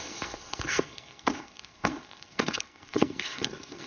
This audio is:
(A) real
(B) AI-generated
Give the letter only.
B